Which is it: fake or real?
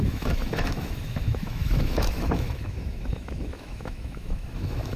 fake